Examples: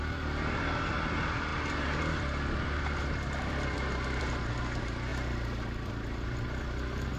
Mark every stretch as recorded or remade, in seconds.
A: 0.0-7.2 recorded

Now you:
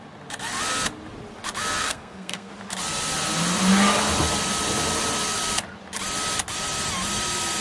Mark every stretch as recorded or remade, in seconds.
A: 0.0-1.8 recorded; 1.8-2.5 remade; 2.5-7.6 recorded

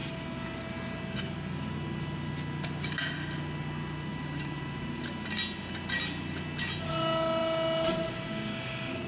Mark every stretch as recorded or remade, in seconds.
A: 0.0-4.1 recorded; 4.1-5.0 remade; 5.0-9.1 recorded